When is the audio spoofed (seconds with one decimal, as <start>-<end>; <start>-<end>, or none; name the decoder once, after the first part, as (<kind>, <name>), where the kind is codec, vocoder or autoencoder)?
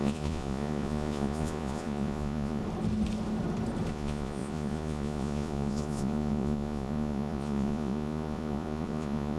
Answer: 0.0-2.6 (vocoder, Vocos); 3.9-9.4